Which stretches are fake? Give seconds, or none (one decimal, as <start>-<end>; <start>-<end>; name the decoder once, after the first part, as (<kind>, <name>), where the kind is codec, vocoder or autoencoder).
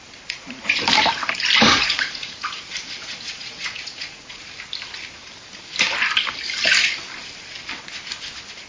1.7-2.6 (vocoder, Vocos); 3.0-4.4